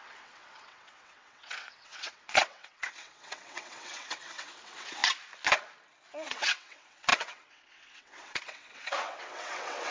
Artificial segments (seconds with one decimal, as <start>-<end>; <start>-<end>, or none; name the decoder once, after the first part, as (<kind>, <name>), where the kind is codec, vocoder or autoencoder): 0.0-5.0 (vocoder, WaveNeXt); 6.1-9.9